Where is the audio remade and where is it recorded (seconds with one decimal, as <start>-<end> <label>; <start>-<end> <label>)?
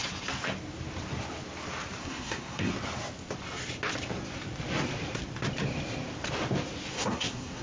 0.0-2.0 recorded; 2.0-2.7 remade; 2.7-6.9 recorded; 6.9-7.6 remade